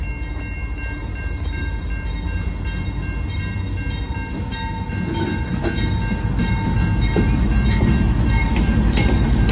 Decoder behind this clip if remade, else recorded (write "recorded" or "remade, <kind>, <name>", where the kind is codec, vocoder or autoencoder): recorded